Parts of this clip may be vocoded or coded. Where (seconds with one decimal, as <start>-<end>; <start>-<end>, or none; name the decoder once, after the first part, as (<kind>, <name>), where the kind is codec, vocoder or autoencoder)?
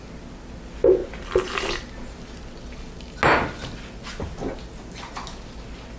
none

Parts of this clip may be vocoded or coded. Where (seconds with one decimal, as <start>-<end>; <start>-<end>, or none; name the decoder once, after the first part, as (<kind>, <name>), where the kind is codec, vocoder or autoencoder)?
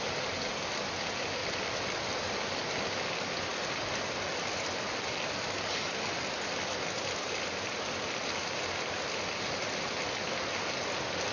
1.4-3.1 (vocoder, BigVGAN v2); 3.5-5.9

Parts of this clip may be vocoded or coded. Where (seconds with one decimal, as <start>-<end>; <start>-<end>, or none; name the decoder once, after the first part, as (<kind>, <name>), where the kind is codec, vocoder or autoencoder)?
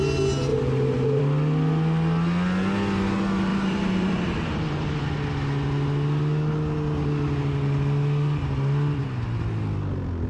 0.5-1.2 (vocoder, BigVGAN v2); 3.5-5.0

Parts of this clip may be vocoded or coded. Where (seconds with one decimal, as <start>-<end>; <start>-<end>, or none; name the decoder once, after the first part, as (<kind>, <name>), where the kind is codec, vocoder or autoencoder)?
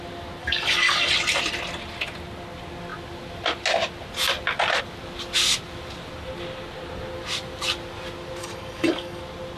0.4-1.1 (codec, DAC); 8.4-9.2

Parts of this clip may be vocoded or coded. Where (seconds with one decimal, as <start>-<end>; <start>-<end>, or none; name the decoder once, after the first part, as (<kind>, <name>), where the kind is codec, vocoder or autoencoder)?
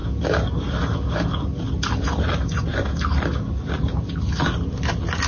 none